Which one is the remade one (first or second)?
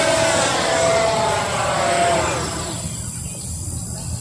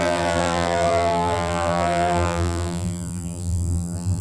second